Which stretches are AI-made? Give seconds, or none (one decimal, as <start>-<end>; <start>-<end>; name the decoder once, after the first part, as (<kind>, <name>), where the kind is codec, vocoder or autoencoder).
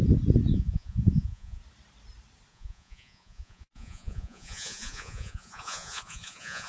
0.5-1.6 (vocoder, Vocos); 2.5-6.7